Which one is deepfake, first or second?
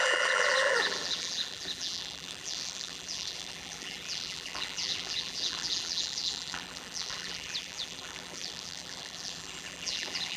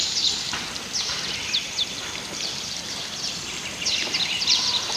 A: first